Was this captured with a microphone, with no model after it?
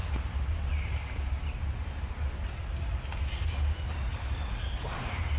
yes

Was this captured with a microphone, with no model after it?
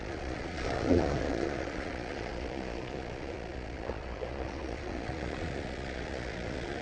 no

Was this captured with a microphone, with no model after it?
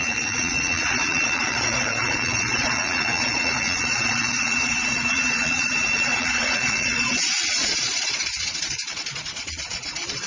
no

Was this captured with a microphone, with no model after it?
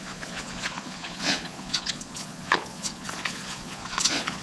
no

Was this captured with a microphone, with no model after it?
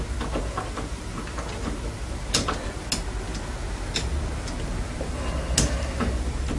yes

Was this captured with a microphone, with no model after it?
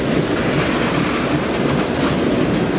yes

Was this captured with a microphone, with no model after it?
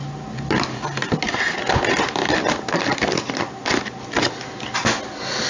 yes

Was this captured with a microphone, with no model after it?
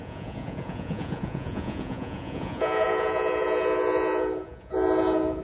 no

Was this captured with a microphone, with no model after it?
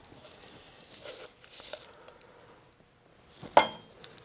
yes